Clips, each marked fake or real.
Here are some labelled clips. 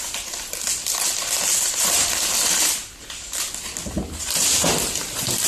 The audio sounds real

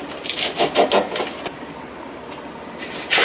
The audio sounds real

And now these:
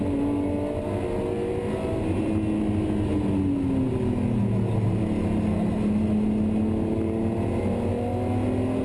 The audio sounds real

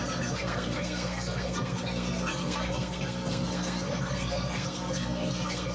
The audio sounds fake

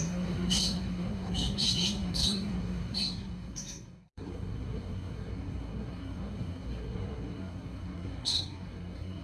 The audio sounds fake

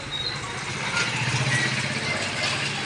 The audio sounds real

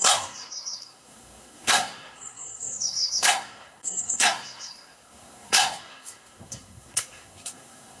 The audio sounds fake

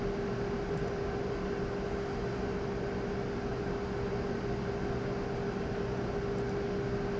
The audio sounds real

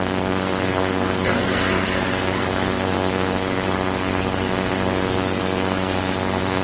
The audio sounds fake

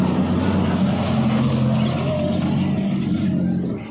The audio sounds real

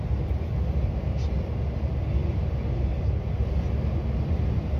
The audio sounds real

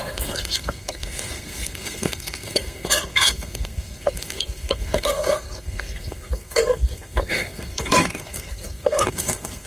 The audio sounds fake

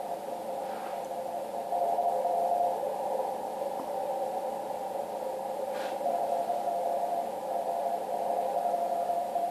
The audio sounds real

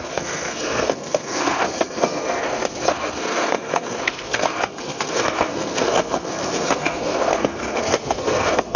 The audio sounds fake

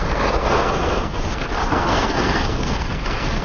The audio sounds fake